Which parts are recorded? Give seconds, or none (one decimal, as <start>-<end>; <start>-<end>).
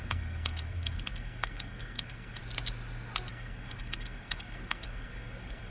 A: 2.4-3.3